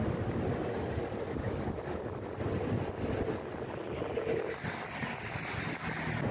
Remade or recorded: recorded